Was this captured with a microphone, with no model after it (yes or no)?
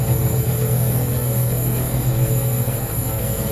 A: no